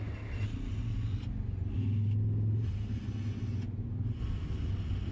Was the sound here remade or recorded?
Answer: recorded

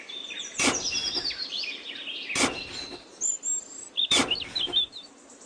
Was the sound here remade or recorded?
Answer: recorded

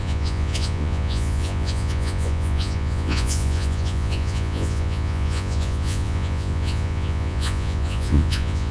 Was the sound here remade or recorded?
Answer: remade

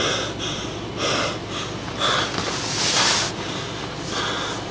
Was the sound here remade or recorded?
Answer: recorded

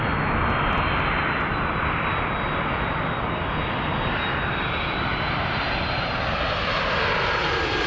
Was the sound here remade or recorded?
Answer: recorded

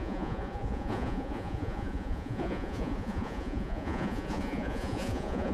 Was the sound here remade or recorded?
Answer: remade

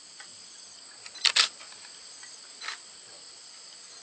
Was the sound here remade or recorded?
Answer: recorded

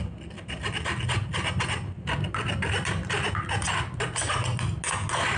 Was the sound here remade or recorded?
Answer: recorded